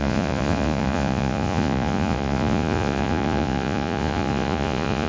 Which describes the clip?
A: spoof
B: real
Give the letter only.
A